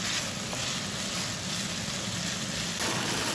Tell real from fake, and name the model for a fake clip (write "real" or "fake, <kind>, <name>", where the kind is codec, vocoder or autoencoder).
real